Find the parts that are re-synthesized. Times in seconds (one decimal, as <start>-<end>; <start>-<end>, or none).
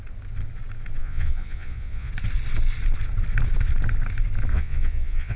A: 1.0-2.1; 4.5-5.4